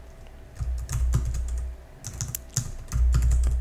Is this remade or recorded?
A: recorded